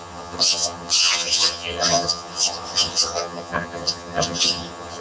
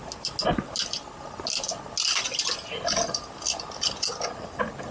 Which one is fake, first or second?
first